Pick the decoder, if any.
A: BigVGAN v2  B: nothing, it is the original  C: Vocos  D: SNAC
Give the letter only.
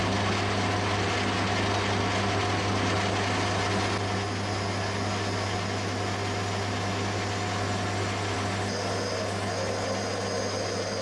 B